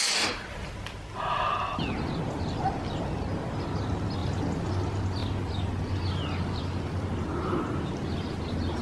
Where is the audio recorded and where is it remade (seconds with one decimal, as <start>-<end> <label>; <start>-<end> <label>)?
0.0-4.2 recorded; 4.2-4.7 remade; 4.7-8.8 recorded